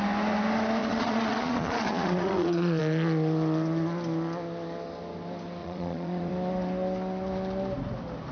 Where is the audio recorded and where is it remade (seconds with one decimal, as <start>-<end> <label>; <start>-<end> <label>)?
0.0-0.8 recorded; 0.8-2.8 remade; 2.8-5.6 recorded; 5.6-6.3 remade; 6.3-8.3 recorded

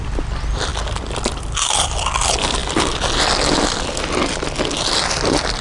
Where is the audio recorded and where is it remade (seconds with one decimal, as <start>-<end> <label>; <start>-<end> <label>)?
0.0-5.6 recorded

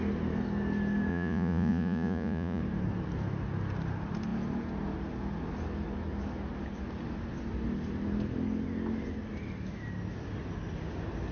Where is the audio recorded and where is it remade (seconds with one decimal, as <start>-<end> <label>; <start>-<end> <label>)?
0.0-1.1 recorded; 1.1-2.6 remade; 2.6-11.3 recorded

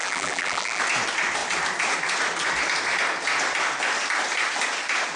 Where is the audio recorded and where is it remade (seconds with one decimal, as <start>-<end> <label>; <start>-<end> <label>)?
0.0-0.8 remade; 0.8-5.2 recorded

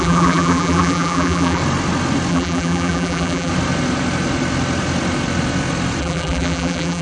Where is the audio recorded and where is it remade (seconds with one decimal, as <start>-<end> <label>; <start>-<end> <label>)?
0.0-1.6 remade; 1.6-2.3 recorded; 2.3-3.5 remade; 3.5-6.0 recorded; 6.0-7.0 remade

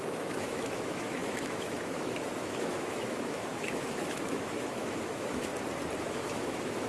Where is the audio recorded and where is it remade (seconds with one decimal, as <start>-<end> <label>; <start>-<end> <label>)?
0.0-5.5 remade; 5.5-6.0 recorded; 6.0-6.9 remade